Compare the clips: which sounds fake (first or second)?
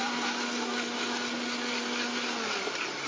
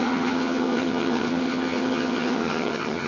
second